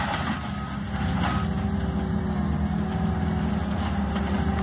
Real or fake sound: real